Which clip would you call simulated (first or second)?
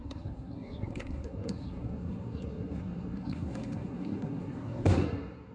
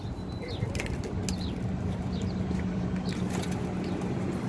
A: first